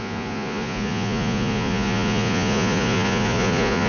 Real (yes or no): no